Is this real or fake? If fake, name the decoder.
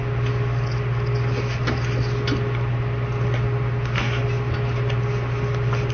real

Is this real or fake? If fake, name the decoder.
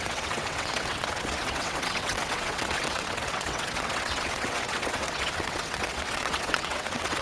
fake, vocoder, WaveNeXt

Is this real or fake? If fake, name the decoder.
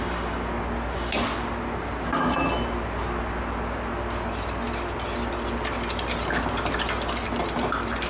real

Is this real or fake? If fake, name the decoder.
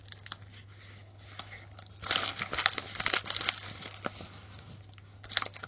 real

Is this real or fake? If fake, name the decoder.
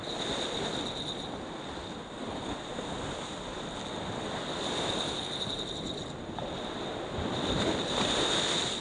real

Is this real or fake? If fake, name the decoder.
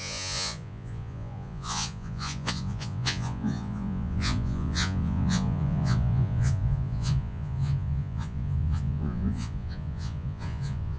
fake, vocoder, Vocos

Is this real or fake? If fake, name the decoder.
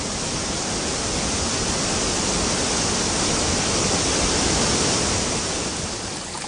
real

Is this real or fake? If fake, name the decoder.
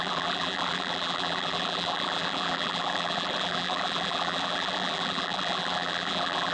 fake, vocoder, BigVGAN v2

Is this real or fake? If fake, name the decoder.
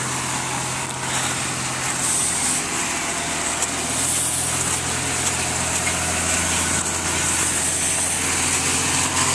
real